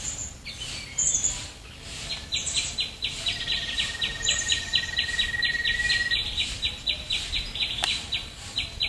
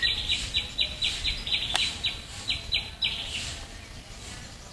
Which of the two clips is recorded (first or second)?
second